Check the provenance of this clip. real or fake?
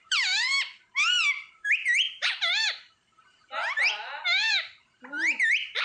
fake